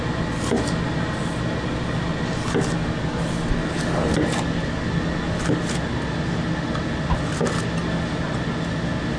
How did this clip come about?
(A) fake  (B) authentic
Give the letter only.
B